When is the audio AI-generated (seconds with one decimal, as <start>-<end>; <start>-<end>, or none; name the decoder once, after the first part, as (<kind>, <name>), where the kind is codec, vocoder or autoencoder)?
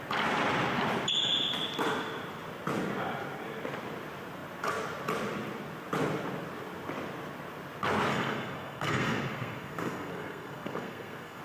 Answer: 8.1-11.4 (codec, SNAC)